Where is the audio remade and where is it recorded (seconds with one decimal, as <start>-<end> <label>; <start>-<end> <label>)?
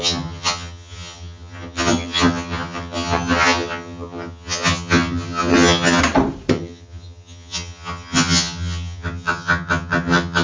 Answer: 0.0-6.0 remade; 6.0-6.5 recorded; 6.5-10.4 remade